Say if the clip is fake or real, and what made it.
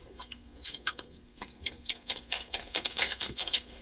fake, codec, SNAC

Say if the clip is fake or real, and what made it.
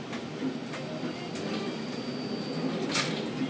real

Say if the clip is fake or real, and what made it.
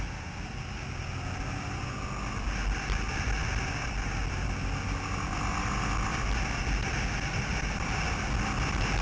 real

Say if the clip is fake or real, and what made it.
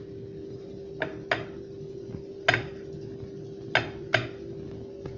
real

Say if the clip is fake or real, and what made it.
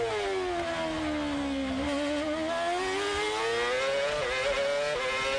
real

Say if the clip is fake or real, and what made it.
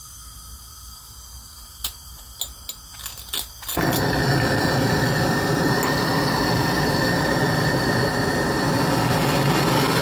real